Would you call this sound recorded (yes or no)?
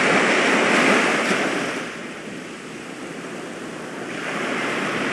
yes